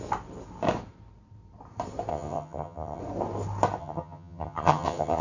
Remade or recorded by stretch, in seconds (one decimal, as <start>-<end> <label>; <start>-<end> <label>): 0.0-2.1 recorded; 2.1-3.0 remade; 3.0-3.8 recorded; 3.8-5.2 remade